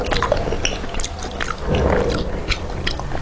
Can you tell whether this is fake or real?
real